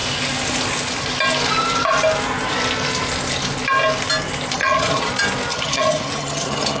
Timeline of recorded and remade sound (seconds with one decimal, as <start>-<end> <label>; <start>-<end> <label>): 0.0-4.6 recorded; 4.6-5.1 remade; 5.1-5.5 recorded; 5.5-6.8 remade